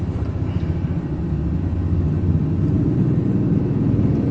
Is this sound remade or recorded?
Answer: recorded